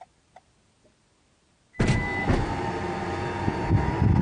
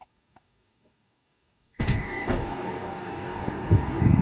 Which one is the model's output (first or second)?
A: second